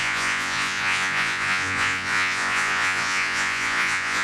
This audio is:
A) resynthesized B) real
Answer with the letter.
A